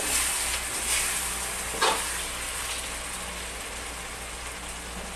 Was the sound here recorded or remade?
recorded